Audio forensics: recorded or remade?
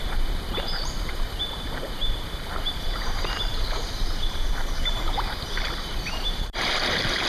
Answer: remade